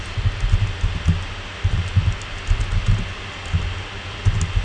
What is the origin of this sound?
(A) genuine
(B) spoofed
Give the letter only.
A